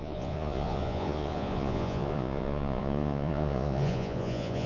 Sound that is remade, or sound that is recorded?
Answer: remade